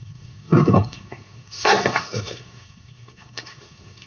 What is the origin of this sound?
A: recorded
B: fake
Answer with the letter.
B